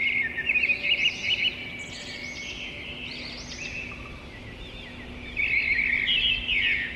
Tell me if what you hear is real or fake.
real